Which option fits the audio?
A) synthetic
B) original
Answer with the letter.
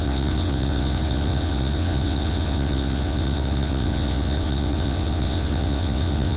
A